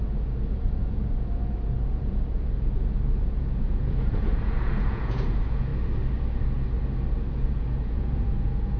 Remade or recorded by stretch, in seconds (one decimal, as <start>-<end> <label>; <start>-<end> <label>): 0.0-5.7 remade; 5.7-7.5 recorded; 7.5-8.8 remade